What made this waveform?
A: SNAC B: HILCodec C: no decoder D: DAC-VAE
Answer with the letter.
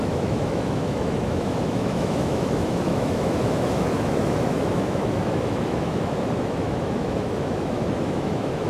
D